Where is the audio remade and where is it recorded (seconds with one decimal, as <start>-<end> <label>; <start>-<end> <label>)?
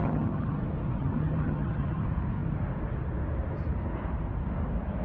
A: 0.0-0.6 remade; 0.6-1.0 recorded; 1.0-2.0 remade; 2.0-5.0 recorded